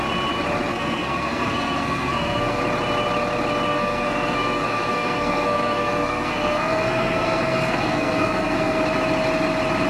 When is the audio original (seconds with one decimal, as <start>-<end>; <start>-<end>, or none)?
0.0-0.7; 2.6-3.7; 8.8-9.9